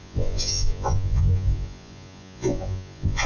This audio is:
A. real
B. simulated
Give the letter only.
B